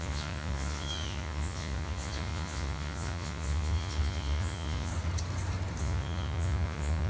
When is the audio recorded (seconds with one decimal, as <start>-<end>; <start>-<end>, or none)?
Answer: 4.9-5.8